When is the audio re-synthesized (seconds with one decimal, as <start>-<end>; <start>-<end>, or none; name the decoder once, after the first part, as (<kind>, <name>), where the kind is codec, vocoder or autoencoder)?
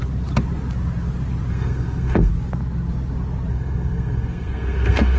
1.5-2.3 (codec, SNAC); 3.5-5.2